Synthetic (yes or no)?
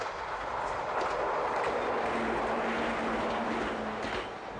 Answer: no